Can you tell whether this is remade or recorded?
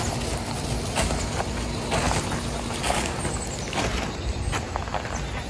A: recorded